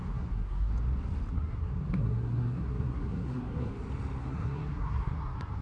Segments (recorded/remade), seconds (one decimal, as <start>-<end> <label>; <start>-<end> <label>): 0.0-0.7 remade; 0.7-1.3 recorded; 1.3-3.7 remade; 3.7-4.2 recorded; 4.2-5.6 remade